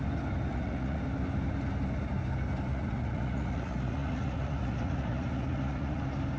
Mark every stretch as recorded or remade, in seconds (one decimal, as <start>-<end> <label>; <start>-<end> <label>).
0.0-0.5 recorded; 0.5-1.0 remade; 1.0-2.7 recorded; 2.7-6.0 remade; 6.0-6.4 recorded